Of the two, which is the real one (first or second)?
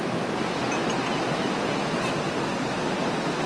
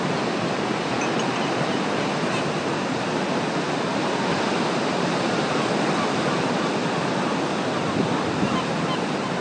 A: first